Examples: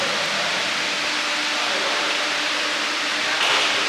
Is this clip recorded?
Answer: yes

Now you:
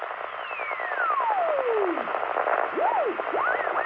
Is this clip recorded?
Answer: yes